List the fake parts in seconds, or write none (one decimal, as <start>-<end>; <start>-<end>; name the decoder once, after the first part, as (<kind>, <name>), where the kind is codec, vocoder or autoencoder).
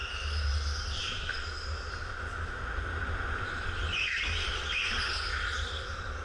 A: none